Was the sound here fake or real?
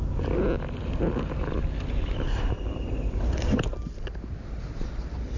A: real